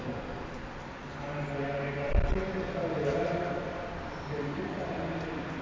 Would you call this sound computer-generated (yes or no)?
no